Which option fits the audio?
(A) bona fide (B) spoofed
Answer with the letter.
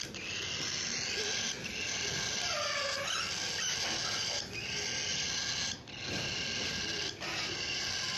A